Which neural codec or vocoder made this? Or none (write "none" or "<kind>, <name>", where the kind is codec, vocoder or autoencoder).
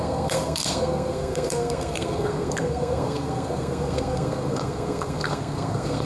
codec, SNAC